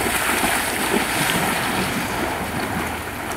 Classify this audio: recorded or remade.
recorded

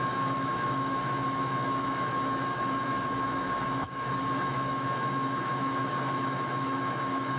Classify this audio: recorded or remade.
remade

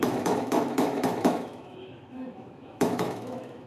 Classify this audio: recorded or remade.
remade